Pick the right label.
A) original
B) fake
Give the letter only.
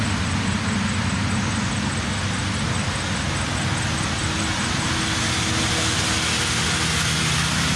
A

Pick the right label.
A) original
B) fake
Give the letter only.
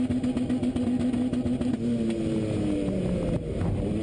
A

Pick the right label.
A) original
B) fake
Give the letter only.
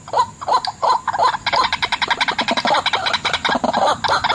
A